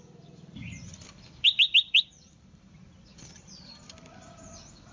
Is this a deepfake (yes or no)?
yes